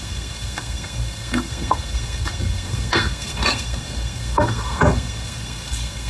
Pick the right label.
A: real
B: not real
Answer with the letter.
B